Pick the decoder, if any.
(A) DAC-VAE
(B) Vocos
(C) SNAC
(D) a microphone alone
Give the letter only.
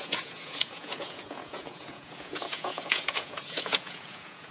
B